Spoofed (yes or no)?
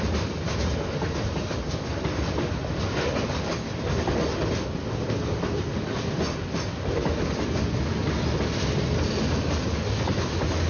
no